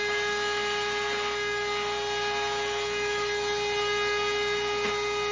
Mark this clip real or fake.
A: real